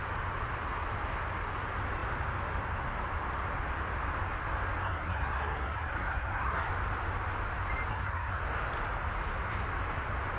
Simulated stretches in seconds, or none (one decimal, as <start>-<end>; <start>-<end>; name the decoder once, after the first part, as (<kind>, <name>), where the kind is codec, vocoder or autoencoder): 4.8-6.7 (codec, SNAC); 7.9-8.4